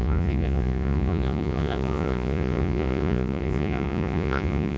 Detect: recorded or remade remade